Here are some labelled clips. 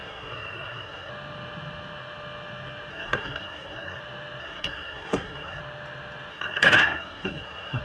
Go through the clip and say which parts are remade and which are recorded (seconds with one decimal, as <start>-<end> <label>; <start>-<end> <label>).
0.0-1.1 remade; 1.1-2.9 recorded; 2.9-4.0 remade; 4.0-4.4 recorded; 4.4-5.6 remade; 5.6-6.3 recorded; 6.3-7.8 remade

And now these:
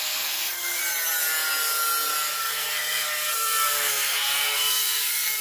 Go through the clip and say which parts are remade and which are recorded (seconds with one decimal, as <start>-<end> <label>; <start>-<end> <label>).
0.0-0.8 remade; 0.8-2.4 recorded; 2.4-5.4 remade

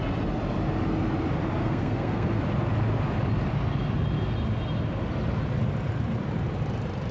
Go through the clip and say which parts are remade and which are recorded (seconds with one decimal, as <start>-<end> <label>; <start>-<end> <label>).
0.0-1.6 recorded; 1.6-2.4 remade; 2.4-7.1 recorded